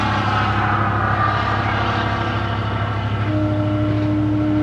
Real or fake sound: real